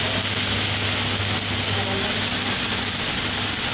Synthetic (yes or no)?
no